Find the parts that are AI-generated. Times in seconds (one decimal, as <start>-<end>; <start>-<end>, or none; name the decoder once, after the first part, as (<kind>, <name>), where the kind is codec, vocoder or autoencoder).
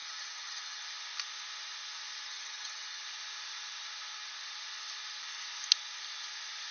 0.0-0.8 (vocoder, HiFi-GAN); 2.3-3.0